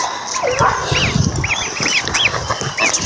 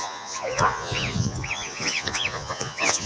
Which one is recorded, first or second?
first